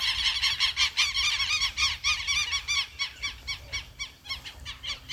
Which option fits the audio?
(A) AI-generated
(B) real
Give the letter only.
B